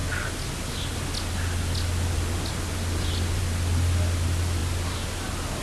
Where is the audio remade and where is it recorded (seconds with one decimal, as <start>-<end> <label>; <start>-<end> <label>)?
0.0-5.6 recorded